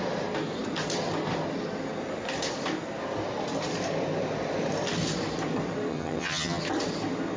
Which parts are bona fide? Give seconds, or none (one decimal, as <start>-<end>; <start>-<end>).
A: 0.0-5.9; 6.6-7.4